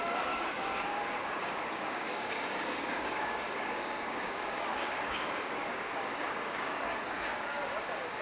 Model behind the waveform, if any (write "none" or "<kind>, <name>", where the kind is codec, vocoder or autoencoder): codec, DAC